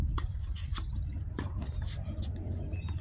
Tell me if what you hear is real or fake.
fake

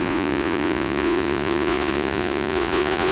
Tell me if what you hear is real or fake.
fake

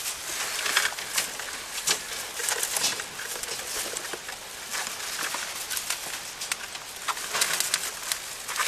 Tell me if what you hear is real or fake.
real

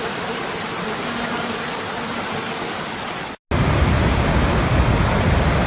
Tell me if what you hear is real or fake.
real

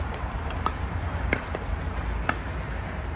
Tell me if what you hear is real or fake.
fake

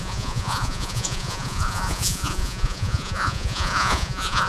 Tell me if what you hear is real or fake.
fake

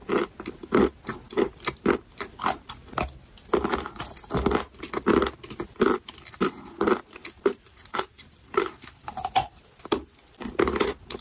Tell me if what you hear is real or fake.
real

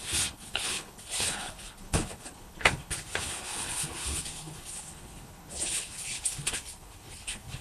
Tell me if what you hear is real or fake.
fake